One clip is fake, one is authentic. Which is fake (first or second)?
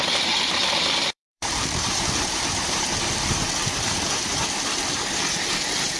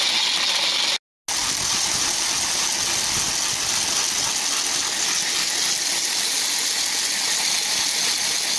first